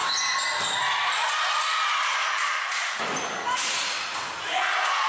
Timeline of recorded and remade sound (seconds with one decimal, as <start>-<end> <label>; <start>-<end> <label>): 0.0-2.2 recorded; 2.2-5.1 remade